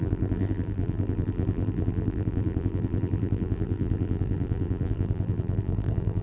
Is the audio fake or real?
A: fake